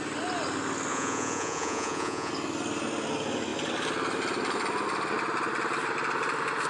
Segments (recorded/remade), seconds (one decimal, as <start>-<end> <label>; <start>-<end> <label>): 0.0-0.9 recorded; 0.9-2.3 remade; 2.3-6.7 recorded